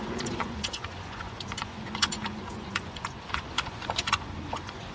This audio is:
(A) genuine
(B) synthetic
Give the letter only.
B